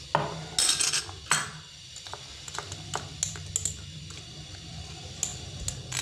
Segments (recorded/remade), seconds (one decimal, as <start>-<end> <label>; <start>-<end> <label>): 0.0-6.0 recorded